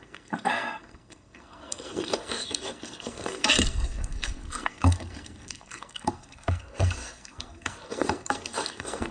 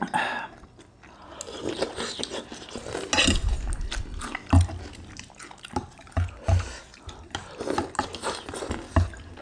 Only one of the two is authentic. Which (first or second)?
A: second